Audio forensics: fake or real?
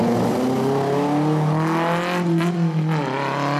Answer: real